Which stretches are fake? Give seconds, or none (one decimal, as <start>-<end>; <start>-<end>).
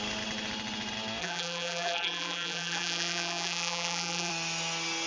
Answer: 1.2-4.3